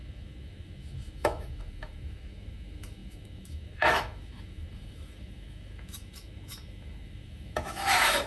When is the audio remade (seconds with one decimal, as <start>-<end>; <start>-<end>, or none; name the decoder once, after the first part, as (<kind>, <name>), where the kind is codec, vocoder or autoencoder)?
0.0-8.3 (autoencoder, DAC-VAE)